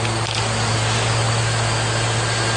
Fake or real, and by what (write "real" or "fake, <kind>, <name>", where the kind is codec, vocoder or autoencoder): real